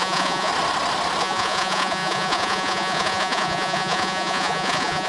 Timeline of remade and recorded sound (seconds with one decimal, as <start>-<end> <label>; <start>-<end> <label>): 0.0-0.5 remade; 0.5-1.2 recorded; 1.2-5.1 remade